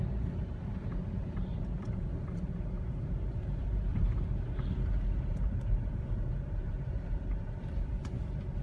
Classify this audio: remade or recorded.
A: remade